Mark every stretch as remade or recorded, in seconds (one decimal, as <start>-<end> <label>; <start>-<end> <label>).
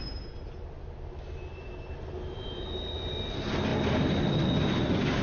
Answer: 0.0-5.2 recorded